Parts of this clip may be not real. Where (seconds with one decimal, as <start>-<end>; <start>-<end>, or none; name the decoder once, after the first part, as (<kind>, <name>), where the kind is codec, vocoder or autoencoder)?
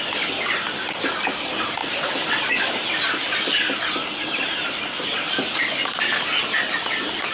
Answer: none